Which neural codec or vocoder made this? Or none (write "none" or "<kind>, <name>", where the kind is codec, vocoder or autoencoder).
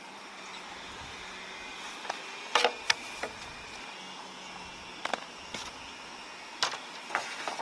none